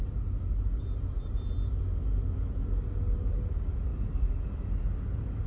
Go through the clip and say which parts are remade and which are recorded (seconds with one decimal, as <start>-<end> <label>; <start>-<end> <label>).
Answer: 0.0-5.5 recorded